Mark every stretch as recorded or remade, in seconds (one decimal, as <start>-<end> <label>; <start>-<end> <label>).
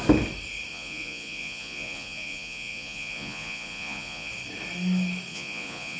0.0-0.7 recorded; 0.7-4.3 remade; 4.3-5.3 recorded; 5.3-6.0 remade